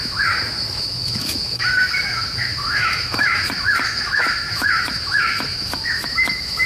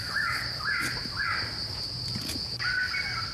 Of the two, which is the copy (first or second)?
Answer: first